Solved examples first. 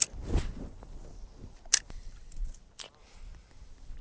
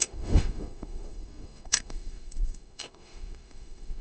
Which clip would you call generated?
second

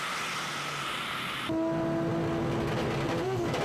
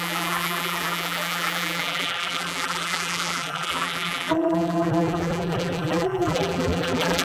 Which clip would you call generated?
second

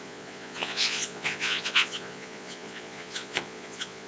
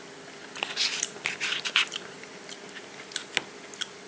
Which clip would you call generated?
first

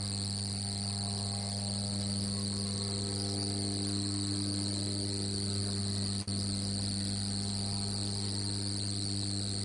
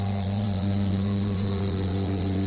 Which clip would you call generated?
second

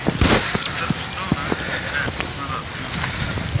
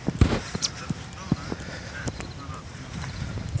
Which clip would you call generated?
second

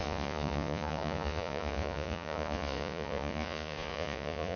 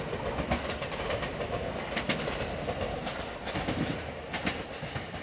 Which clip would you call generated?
first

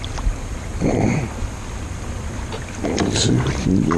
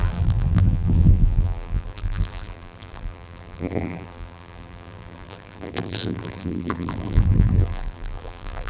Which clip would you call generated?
second